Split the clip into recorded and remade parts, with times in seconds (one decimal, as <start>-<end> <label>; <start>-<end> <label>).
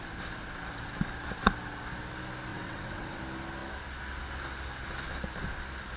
0.0-2.5 recorded; 2.5-3.2 remade; 3.2-6.0 recorded